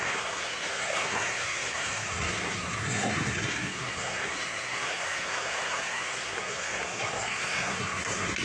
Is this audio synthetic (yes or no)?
yes